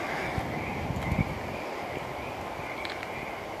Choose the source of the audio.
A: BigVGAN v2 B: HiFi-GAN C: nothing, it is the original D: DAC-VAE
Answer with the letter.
C